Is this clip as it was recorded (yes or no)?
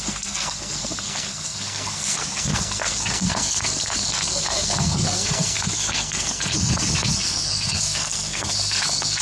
no